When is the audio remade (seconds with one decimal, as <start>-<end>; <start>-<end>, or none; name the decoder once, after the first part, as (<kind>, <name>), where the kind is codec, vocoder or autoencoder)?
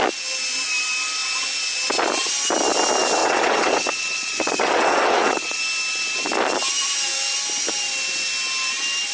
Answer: 3.2-5.6 (vocoder, WaveNeXt)